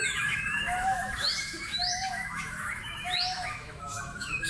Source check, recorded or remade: remade